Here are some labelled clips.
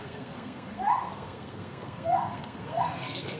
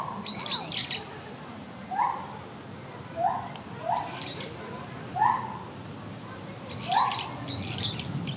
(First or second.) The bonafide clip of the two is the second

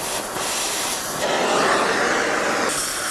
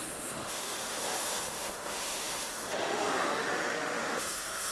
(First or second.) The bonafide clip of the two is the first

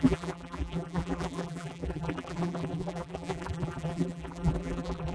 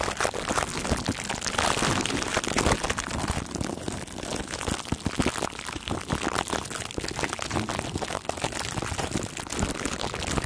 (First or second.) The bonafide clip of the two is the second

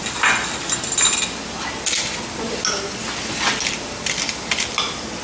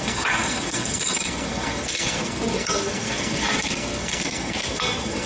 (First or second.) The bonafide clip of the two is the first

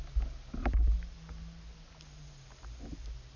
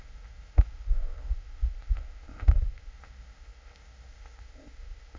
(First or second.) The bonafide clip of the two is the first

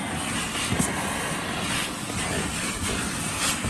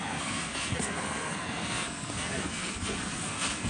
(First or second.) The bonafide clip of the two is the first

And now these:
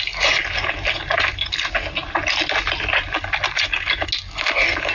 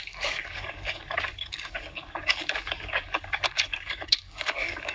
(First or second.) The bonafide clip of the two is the first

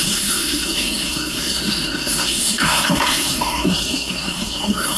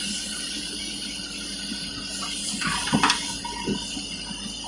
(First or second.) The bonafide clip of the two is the second